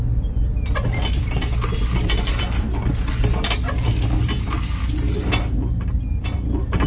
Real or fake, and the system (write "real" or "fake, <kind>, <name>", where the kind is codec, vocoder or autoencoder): real